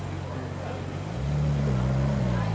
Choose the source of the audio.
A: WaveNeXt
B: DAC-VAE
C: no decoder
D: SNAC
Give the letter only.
C